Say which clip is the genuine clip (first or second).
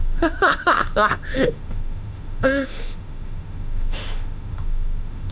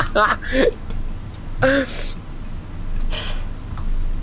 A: second